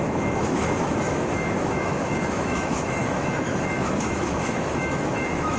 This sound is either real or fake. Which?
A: fake